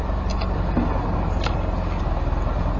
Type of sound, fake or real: real